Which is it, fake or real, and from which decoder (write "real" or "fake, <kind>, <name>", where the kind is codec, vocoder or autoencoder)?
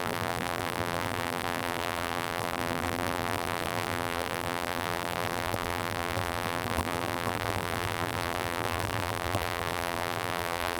fake, vocoder, BigVGAN v2